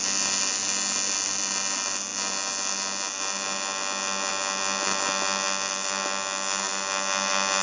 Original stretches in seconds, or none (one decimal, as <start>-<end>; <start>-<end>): 0.0-7.6